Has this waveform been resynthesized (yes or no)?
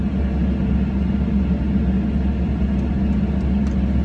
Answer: no